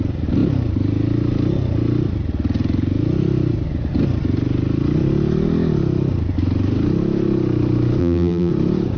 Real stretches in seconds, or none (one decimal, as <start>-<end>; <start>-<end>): 0.0-8.0; 8.5-9.0

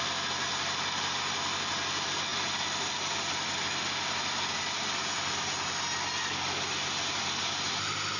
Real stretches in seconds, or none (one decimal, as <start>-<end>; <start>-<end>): 0.0-8.2

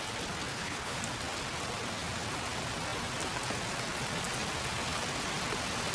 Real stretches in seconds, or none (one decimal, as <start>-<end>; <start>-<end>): 0.0-0.5; 1.0-5.9

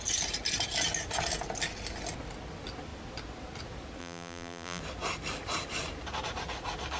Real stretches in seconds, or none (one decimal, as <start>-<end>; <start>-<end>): 0.0-4.0; 4.8-7.0

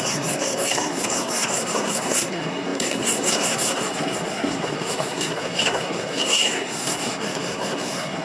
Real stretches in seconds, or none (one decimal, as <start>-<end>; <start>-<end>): none

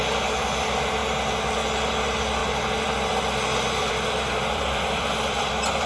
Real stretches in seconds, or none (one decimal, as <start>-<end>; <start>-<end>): 0.0-2.4

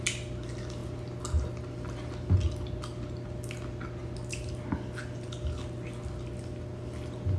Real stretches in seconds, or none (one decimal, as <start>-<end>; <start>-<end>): 0.0-7.4